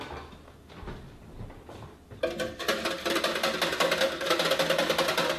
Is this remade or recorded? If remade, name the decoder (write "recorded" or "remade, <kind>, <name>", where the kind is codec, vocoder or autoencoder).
recorded